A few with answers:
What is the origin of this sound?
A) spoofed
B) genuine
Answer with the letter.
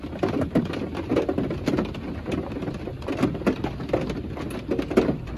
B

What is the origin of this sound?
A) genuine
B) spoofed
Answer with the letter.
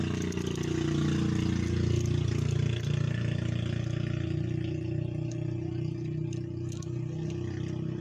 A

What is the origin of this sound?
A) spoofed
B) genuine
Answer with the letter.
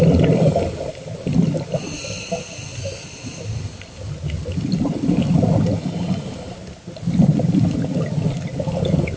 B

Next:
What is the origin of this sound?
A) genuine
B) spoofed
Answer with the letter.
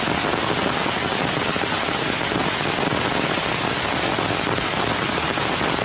A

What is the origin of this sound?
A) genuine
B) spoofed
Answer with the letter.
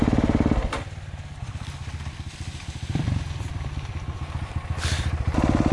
B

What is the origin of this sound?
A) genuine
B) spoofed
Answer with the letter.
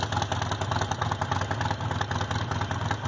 A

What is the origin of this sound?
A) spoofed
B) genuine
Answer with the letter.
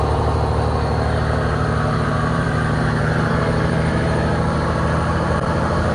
A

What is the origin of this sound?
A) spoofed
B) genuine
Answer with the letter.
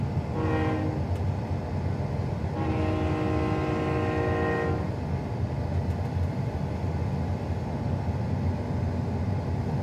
B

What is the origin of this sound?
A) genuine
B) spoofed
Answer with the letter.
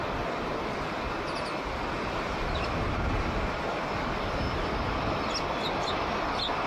A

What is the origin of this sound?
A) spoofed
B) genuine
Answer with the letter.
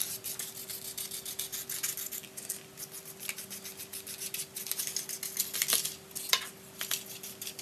B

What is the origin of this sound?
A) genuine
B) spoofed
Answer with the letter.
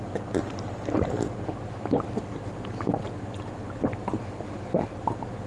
A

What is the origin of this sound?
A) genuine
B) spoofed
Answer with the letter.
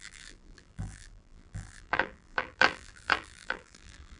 B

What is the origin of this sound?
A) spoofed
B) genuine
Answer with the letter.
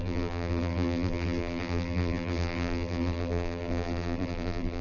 A